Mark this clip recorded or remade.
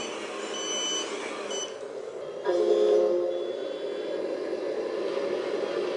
recorded